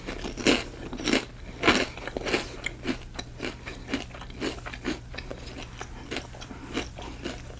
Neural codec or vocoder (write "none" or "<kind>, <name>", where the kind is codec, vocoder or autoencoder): none